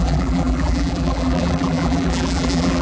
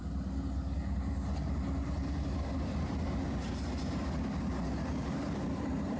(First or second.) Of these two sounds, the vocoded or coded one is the first